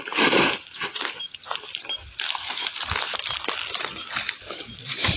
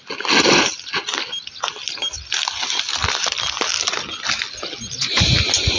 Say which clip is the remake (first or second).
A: first